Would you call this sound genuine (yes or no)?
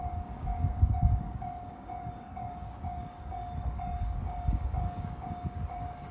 no